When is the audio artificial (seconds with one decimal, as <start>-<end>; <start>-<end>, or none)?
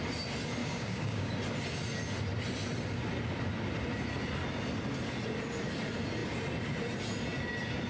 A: 0.6-1.3